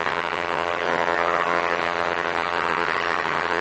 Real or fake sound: fake